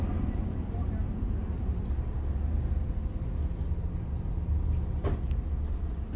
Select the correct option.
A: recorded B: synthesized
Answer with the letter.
A